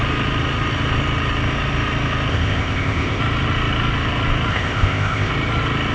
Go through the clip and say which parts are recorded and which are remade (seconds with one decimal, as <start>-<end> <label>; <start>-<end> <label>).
0.0-2.3 recorded; 2.3-3.2 remade; 3.2-4.5 recorded; 4.5-5.3 remade; 5.3-5.9 recorded